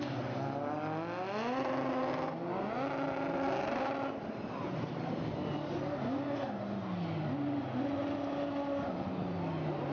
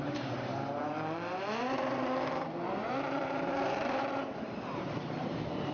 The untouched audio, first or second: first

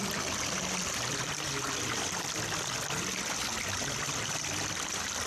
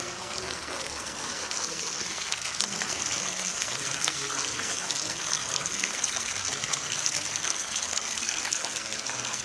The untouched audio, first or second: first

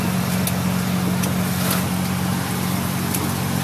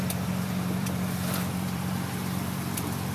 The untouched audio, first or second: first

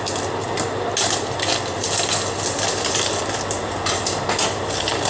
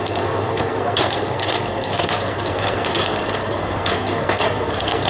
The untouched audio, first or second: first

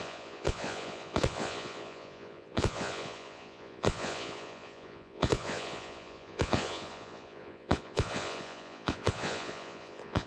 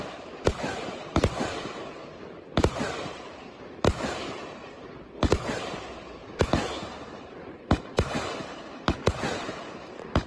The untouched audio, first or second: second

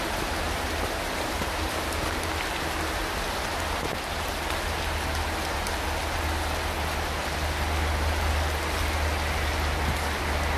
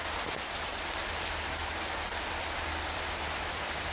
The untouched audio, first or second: first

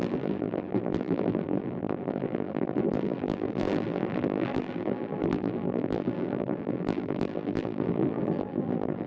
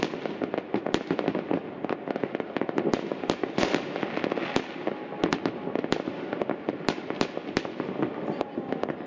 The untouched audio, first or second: second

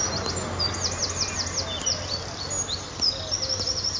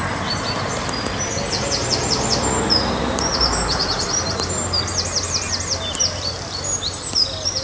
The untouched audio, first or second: first